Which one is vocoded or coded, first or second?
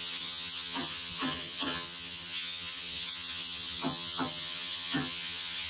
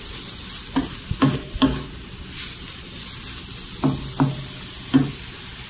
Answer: first